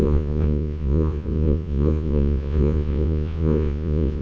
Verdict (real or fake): fake